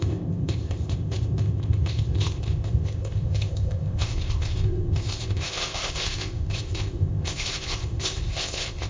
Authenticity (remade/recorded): remade